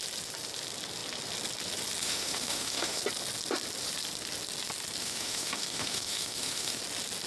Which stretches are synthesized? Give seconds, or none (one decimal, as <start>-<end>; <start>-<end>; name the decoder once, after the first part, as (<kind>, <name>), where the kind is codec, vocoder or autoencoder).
2.0-3.0 (autoencoder, DAC-VAE); 5.0-6.8